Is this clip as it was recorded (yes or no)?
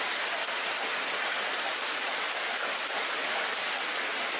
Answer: yes